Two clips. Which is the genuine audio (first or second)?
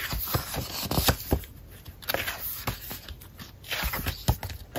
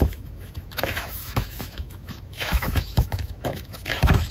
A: first